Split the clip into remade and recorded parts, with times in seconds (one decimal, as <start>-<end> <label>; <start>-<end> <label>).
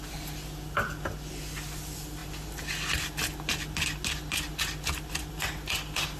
0.0-6.2 recorded